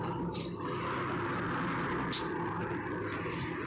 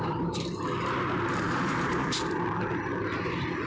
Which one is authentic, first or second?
first